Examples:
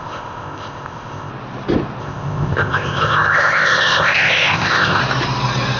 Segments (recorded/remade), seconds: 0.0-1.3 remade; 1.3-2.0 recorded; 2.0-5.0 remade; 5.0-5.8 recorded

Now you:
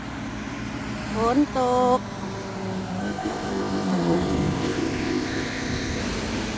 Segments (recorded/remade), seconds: 0.0-3.0 recorded; 3.0-6.0 remade; 6.0-6.6 recorded

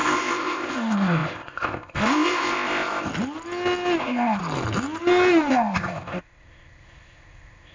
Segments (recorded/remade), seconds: 0.0-3.1 remade; 3.1-4.0 recorded; 4.0-4.4 remade; 4.4-5.5 recorded; 5.5-7.7 remade

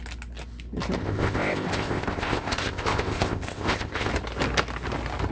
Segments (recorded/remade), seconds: 0.0-1.0 recorded; 1.0-4.1 remade; 4.1-5.3 recorded

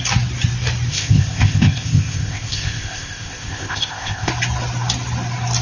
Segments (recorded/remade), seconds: 0.0-0.9 recorded; 0.9-4.3 remade; 4.3-5.6 recorded

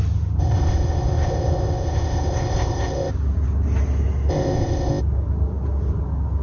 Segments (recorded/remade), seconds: 0.0-0.4 recorded; 0.4-3.1 remade; 3.1-4.3 recorded; 4.3-5.0 remade; 5.0-6.4 recorded